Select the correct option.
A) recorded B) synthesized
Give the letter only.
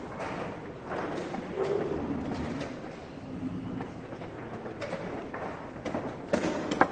A